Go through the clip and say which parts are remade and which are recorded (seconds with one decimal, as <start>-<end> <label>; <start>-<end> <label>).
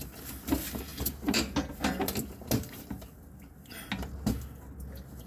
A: 0.0-5.3 recorded